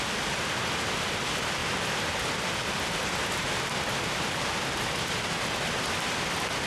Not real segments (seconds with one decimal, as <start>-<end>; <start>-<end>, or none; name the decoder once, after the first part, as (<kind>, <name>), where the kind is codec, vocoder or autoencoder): none